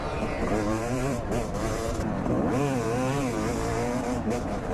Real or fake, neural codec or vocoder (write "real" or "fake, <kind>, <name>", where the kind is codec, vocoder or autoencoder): fake, vocoder, BigVGAN v2